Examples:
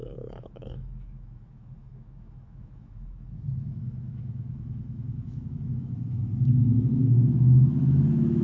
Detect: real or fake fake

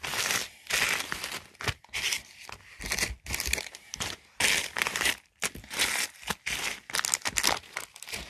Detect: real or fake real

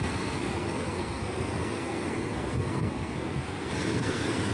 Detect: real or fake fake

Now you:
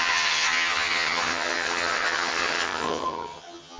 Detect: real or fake fake